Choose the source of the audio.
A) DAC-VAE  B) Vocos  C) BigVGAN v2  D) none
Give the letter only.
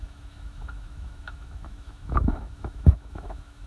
A